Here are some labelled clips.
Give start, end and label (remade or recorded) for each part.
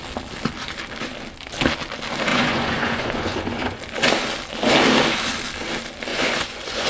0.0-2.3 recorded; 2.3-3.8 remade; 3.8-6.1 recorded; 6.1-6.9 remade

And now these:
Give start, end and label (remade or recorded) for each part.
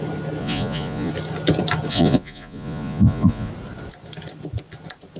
0.0-0.4 recorded; 0.4-1.1 remade; 1.1-1.9 recorded; 1.9-3.5 remade; 3.5-5.2 recorded